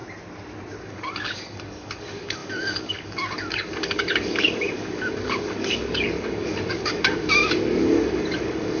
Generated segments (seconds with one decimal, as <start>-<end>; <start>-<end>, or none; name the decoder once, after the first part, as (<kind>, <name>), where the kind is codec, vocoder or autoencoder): 0.8-8.8 (codec, DAC)